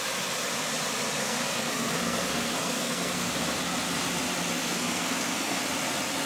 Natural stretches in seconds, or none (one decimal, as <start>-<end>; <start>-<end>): 0.0-1.2; 3.3-4.6; 5.6-6.3